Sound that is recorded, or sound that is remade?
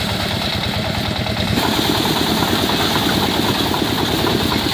recorded